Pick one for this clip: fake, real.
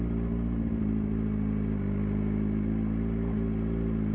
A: real